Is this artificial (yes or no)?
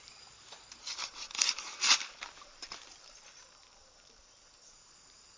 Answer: yes